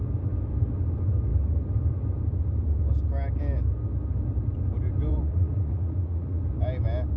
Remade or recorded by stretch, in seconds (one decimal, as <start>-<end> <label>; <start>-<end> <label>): 0.0-5.1 recorded; 5.1-6.4 remade; 6.4-7.2 recorded